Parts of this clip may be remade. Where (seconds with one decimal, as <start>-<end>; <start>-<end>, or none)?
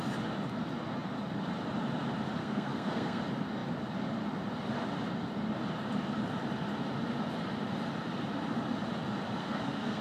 2.4-3.2; 9.4-10.0